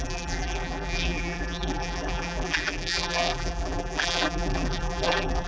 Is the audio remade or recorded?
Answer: remade